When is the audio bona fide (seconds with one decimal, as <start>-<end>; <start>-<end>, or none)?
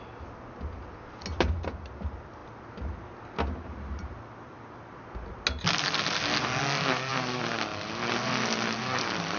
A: 0.0-9.4